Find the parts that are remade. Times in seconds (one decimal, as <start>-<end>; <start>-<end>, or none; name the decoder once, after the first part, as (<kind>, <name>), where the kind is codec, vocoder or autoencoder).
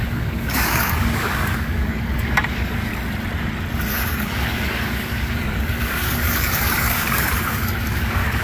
0.0-2.9 (codec, DAC); 3.9-8.4